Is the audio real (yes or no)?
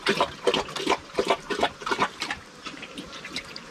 no